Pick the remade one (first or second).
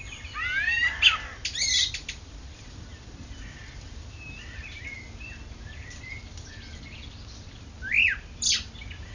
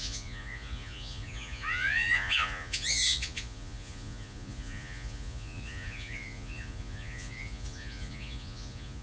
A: second